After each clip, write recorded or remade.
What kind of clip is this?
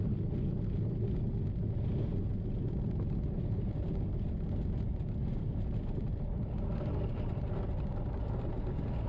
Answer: recorded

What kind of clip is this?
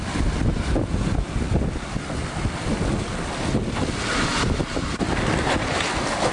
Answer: recorded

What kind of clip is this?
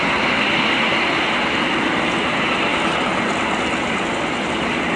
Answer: recorded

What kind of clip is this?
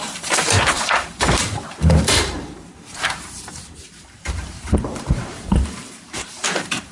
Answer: remade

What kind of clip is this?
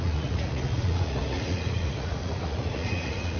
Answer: remade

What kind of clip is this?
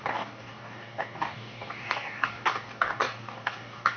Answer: remade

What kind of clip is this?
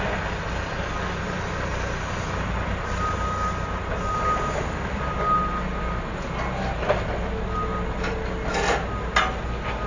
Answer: recorded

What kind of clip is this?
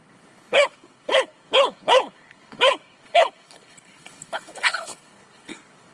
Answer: remade